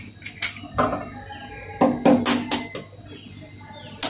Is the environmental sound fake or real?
real